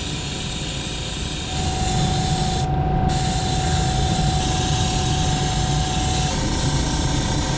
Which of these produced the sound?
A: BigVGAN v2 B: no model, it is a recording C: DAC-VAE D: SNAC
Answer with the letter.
B